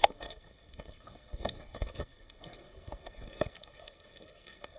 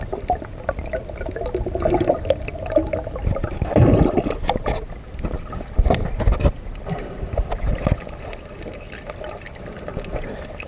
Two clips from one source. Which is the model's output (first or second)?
first